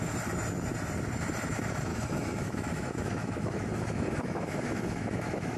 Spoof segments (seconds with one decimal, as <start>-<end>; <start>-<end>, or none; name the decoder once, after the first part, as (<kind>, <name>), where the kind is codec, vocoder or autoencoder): 1.9-5.6 (autoencoder, DAC-VAE)